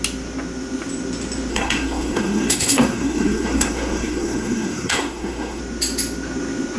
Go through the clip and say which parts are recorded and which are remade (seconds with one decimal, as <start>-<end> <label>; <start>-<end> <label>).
0.0-1.5 recorded; 1.5-5.6 remade; 5.6-6.8 recorded